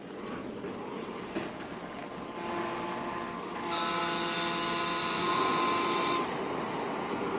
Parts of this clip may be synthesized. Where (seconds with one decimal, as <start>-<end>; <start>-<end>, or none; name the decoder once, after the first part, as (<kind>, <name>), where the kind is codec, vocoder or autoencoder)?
5.0-5.6 (vocoder, Vocos)

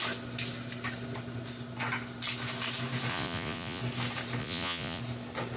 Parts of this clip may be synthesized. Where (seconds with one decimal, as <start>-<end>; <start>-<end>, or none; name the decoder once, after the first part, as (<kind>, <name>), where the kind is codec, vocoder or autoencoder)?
3.1-3.8 (vocoder, Vocos); 4.4-5.0

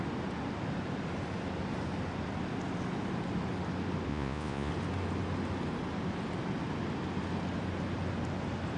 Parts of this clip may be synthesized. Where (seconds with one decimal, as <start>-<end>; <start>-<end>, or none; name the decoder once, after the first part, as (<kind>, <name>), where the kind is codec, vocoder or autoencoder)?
4.1-4.7 (vocoder, Vocos)

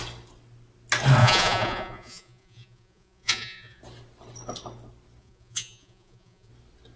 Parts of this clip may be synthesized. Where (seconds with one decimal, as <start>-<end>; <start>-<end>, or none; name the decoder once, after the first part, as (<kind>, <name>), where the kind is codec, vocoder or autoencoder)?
1.2-3.8 (vocoder, Vocos); 5.2-6.5

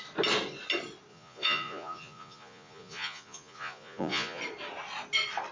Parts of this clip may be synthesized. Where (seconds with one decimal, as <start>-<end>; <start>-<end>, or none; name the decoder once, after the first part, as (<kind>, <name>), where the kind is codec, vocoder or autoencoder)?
1.1-4.4 (vocoder, Vocos)

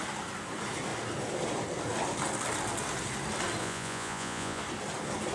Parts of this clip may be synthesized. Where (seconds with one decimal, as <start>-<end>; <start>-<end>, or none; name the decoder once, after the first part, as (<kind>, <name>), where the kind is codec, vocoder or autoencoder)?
3.6-4.6 (vocoder, Vocos)

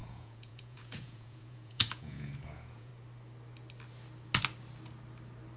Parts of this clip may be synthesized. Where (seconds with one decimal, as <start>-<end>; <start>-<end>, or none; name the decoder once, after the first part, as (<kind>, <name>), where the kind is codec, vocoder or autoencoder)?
0.0-2.9 (vocoder, Vocos)